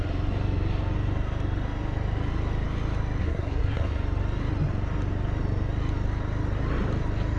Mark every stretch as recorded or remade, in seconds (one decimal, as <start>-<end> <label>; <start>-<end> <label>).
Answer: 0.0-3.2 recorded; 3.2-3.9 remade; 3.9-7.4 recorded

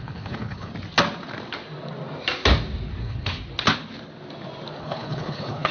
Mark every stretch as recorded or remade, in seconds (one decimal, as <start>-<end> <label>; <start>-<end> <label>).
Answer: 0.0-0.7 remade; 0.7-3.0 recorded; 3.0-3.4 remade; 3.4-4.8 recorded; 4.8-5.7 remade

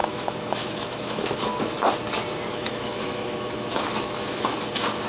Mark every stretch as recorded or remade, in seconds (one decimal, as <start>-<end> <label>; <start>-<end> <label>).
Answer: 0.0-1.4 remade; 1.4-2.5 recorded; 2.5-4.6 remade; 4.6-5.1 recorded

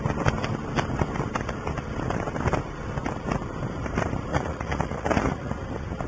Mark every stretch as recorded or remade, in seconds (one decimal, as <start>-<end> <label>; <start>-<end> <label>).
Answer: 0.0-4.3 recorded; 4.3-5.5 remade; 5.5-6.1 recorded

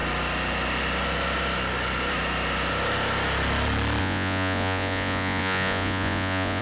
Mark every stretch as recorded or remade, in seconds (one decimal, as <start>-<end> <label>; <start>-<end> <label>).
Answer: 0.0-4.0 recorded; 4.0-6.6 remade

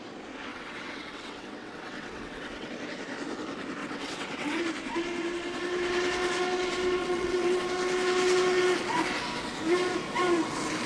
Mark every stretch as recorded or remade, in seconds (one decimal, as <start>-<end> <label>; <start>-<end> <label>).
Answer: 0.0-0.5 recorded; 0.5-2.7 remade; 2.7-3.8 recorded; 3.8-4.6 remade; 4.6-7.0 recorded; 7.0-7.6 remade; 7.6-10.9 recorded

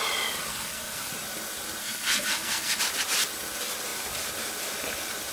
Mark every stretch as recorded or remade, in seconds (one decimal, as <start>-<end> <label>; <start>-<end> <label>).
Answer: 0.0-0.5 recorded; 0.5-1.1 remade; 1.1-1.8 recorded; 1.8-2.8 remade; 2.8-5.3 recorded